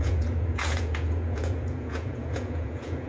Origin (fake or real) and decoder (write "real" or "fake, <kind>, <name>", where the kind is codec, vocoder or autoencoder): fake, vocoder, Vocos